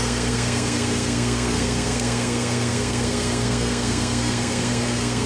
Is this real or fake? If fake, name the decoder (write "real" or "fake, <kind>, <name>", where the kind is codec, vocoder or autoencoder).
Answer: fake, codec, SNAC